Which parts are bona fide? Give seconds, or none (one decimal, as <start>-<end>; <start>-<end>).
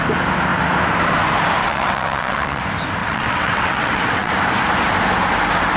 0.0-1.6; 2.6-3.0; 4.3-5.8